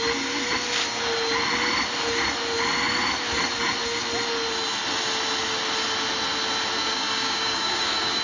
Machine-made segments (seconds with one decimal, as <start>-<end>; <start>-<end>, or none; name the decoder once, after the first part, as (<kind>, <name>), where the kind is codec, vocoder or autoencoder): 6.8-8.2 (codec, DAC)